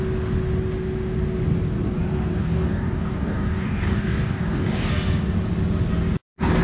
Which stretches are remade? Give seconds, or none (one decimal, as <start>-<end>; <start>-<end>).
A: 2.4-4.9